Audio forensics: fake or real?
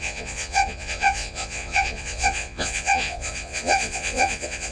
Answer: fake